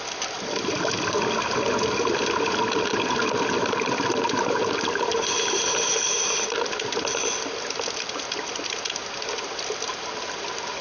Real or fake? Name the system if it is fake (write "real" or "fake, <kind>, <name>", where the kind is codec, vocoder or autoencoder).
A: real